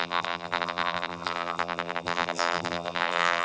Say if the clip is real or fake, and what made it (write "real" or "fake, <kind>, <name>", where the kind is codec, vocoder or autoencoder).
fake, vocoder, BigVGAN v2